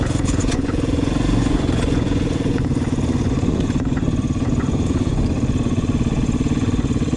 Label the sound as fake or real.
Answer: fake